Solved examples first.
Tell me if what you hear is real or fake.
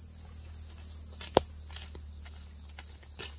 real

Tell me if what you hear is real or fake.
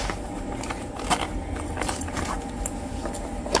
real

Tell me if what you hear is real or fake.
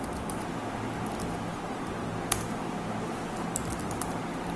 real